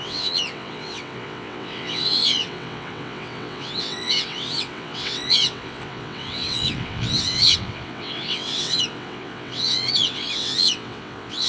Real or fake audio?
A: fake